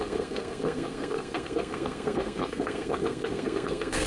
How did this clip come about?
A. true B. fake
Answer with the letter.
B